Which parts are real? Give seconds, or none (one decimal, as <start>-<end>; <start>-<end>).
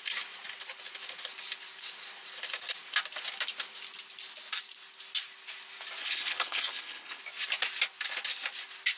0.0-6.0; 7.2-9.0